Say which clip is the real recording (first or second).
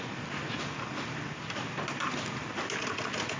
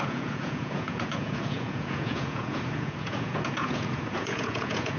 first